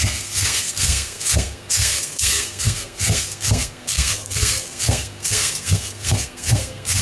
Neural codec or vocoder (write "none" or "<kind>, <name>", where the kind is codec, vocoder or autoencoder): codec, SNAC